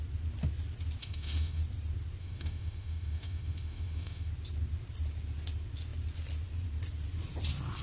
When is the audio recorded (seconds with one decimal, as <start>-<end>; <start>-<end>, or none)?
0.0-1.0; 1.6-2.2; 4.3-7.8